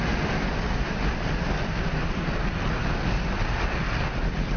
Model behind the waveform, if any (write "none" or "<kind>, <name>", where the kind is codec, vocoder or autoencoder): none